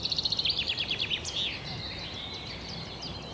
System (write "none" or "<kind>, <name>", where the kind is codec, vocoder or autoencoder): none